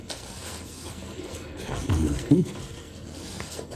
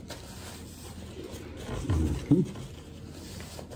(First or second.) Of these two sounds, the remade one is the first